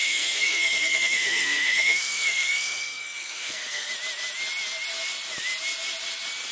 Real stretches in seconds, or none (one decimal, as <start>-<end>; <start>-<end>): 3.9-6.5